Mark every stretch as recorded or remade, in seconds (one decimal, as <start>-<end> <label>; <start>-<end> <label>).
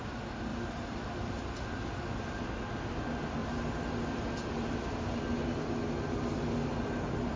0.0-0.5 recorded; 0.5-2.4 remade; 2.4-3.4 recorded; 3.4-5.2 remade; 5.2-7.4 recorded